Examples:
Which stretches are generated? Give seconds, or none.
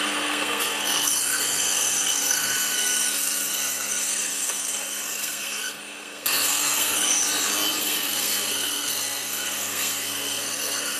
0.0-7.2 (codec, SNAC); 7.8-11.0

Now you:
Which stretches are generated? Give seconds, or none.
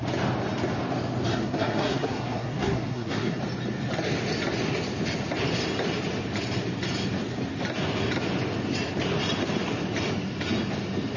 1.3-3.4 (codec, SNAC)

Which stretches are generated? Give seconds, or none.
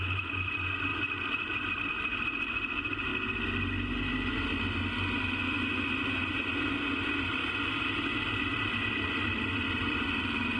0.0-3.1 (vocoder, BigVGAN v2); 6.2-7.4; 8.3-10.6